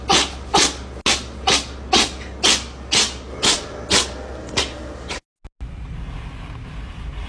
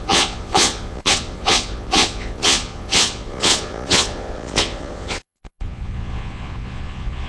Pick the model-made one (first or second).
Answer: second